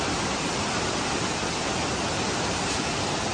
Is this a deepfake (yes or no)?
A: yes